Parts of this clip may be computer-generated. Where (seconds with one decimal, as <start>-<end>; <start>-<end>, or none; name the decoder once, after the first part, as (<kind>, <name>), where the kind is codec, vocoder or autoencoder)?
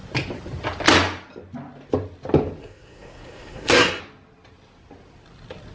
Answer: 2.6-4.0 (codec, SNAC)